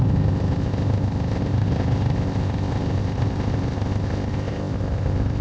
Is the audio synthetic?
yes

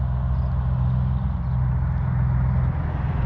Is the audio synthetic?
no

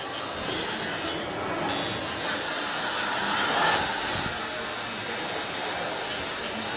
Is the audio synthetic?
no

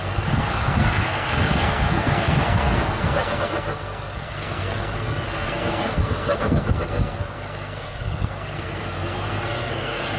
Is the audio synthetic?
yes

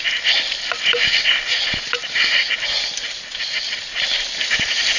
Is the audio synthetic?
no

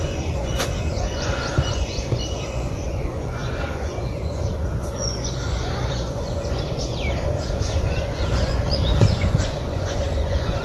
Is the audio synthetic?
yes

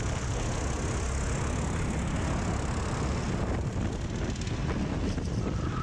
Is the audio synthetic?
no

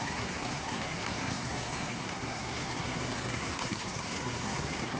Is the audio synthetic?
yes